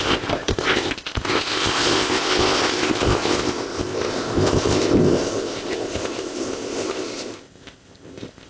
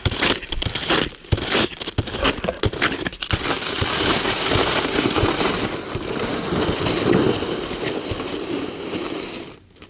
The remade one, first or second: first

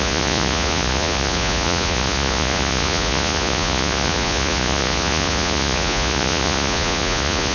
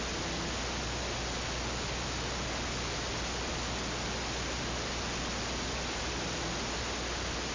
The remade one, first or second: first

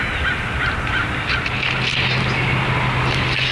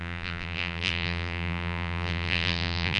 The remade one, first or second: second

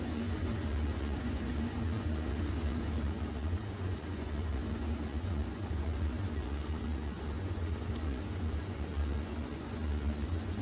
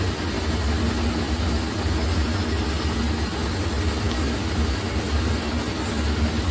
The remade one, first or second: first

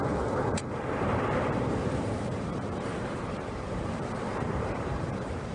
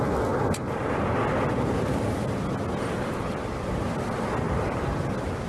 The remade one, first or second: first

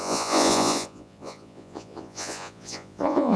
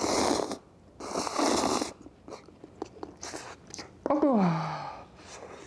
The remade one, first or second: first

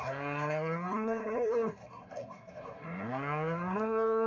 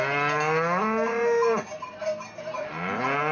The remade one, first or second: first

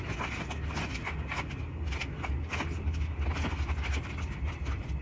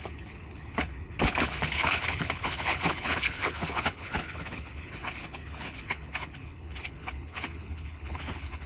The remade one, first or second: second